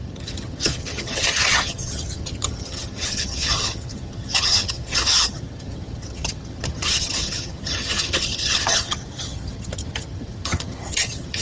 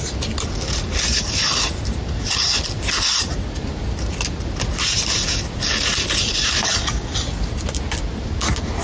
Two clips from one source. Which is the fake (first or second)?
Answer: first